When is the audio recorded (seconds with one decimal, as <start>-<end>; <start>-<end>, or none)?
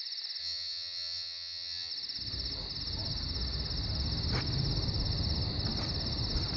0.0-0.4; 1.9-6.6